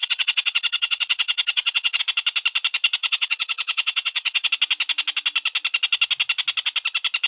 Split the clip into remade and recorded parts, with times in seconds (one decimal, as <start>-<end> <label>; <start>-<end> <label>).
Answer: 0.0-2.0 remade; 2.0-3.0 recorded; 3.0-4.5 remade; 4.5-7.3 recorded